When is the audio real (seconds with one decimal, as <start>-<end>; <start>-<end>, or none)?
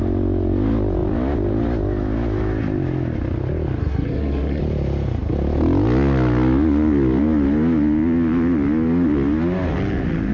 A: 0.0-3.8; 4.6-10.3